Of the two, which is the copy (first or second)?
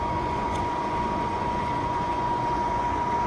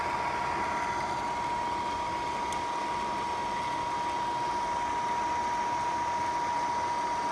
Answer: first